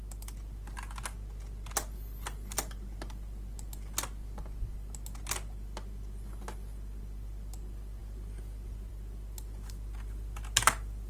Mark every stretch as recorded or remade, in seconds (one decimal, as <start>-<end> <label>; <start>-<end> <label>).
0.0-11.1 recorded